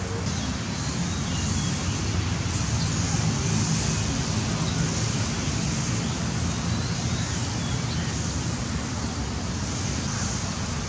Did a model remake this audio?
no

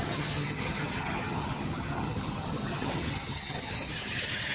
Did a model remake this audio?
yes